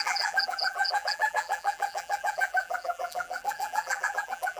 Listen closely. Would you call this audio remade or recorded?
remade